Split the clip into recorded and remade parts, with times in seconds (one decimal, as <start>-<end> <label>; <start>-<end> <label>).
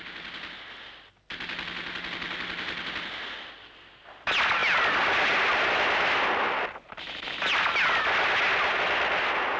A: 0.0-4.6 recorded; 4.6-7.8 remade; 7.8-9.6 recorded